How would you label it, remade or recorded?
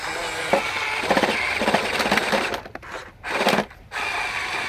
recorded